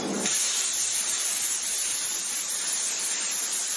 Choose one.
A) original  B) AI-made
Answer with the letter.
A